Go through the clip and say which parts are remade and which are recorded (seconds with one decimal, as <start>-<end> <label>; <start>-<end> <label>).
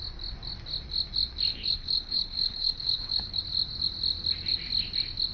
0.0-1.5 recorded; 1.5-3.4 remade; 3.4-5.3 recorded